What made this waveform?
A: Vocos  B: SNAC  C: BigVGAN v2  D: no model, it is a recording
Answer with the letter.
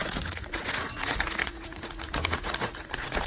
A